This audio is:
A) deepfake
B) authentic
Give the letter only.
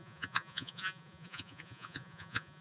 A